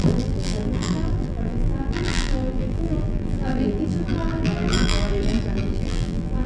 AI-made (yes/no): yes